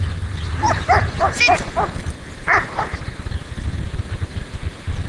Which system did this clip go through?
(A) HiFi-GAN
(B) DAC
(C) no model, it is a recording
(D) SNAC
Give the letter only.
C